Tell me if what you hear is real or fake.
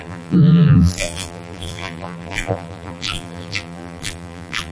fake